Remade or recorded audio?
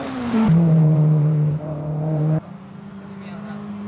remade